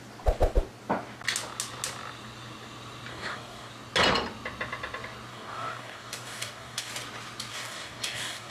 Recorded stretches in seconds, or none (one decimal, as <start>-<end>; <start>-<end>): 0.0-3.1; 3.7-5.3; 6.9-7.5